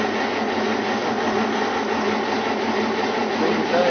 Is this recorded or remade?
recorded